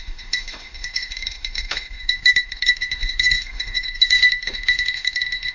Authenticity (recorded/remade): remade